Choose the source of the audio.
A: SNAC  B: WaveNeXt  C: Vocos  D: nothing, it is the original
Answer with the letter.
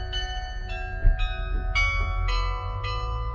D